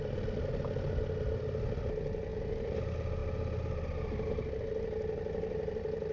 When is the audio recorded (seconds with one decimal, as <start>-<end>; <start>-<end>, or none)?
0.0-6.1